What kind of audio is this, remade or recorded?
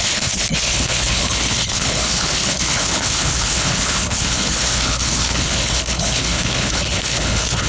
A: remade